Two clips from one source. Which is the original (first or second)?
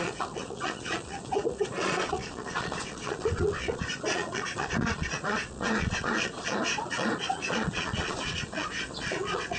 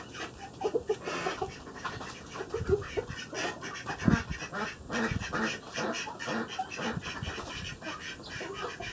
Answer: second